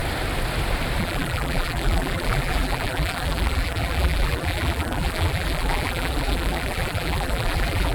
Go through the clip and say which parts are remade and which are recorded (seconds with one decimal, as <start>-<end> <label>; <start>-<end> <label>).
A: 0.0-1.0 recorded; 1.0-7.9 remade

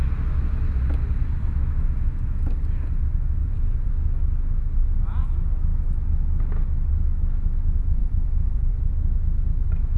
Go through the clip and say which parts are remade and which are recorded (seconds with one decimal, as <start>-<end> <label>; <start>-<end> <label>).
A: 0.0-3.4 recorded; 3.4-3.9 remade; 3.9-8.0 recorded; 8.0-8.9 remade; 8.9-10.0 recorded

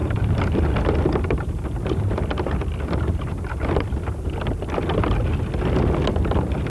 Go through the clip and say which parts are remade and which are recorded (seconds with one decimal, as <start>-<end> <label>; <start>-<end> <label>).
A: 0.0-4.0 remade; 4.0-6.7 recorded

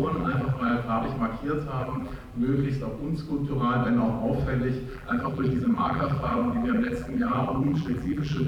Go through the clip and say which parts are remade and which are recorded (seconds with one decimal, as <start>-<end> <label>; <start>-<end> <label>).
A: 0.0-0.7 remade; 0.7-1.8 recorded; 1.8-2.2 remade; 2.2-4.9 recorded; 4.9-8.5 remade

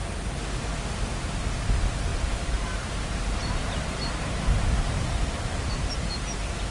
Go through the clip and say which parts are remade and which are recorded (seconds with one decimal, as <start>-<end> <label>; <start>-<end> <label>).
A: 0.0-2.1 recorded; 2.1-6.1 remade; 6.1-6.7 recorded

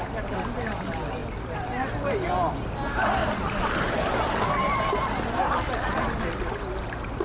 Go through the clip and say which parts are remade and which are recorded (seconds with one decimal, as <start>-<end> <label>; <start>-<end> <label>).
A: 0.0-3.2 recorded; 3.2-5.0 remade; 5.0-7.2 recorded

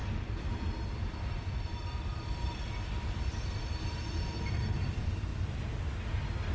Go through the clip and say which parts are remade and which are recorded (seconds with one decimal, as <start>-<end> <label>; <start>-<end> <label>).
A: 0.0-5.3 remade; 5.3-6.5 recorded

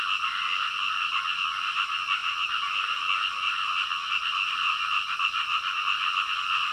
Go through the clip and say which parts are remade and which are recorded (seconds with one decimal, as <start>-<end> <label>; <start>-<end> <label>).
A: 0.0-6.7 recorded